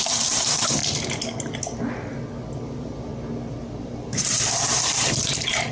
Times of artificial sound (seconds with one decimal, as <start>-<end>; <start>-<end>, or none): 0.0-0.8; 2.5-3.1; 3.8-5.7